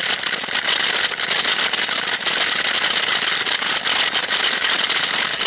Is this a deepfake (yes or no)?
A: no